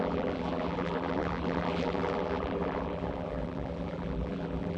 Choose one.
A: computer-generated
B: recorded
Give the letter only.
A